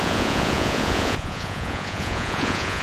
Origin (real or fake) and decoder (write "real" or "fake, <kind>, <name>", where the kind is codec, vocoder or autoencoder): fake, vocoder, Vocos